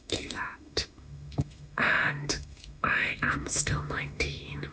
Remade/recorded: remade